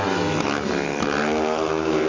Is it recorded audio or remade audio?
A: recorded